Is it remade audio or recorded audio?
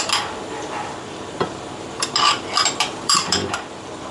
remade